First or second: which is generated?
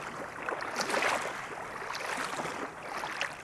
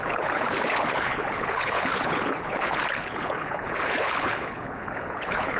second